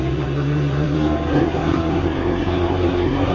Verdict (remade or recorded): remade